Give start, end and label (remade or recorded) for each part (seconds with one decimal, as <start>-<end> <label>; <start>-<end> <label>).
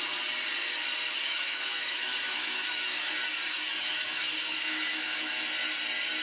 0.0-1.2 recorded; 1.2-3.1 remade; 3.1-3.7 recorded; 3.7-5.3 remade; 5.3-6.2 recorded